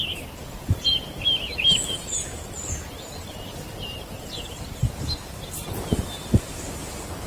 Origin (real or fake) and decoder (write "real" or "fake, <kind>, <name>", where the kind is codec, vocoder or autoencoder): real